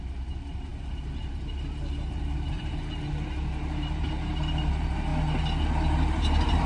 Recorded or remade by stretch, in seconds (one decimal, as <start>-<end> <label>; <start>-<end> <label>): 0.0-5.1 remade; 5.1-5.6 recorded; 5.6-6.7 remade

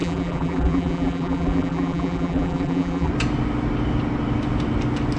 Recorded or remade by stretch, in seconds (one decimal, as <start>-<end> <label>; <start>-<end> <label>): 0.0-3.1 remade; 3.1-5.2 recorded